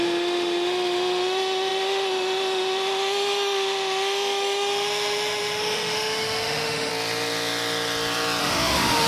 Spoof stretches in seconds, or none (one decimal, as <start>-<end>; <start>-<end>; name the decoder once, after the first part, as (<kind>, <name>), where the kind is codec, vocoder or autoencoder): 0.0-6.9 (autoencoder, DAC-VAE); 8.4-9.1